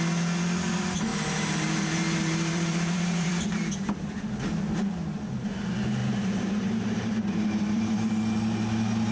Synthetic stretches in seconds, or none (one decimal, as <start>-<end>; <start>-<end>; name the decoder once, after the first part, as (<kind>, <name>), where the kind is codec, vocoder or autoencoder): 1.1-3.3 (vocoder, BigVGAN v2); 6.0-8.1